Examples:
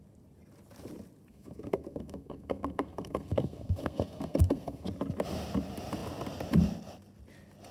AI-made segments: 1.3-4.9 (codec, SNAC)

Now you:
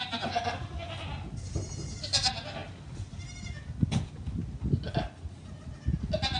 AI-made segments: none

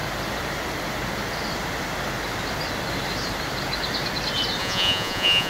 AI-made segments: 4.6-5.5 (vocoder, Vocos)